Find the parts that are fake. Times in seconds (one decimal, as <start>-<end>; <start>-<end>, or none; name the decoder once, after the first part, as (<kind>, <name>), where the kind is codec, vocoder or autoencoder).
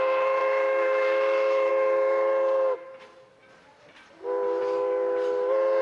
0.4-1.7 (autoencoder, DAC-VAE)